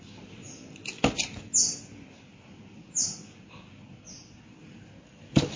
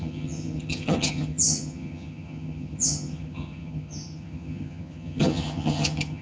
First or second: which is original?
first